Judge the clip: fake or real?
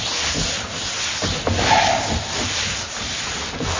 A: real